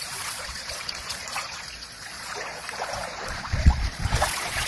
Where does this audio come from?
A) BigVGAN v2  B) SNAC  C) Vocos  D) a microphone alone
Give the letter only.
C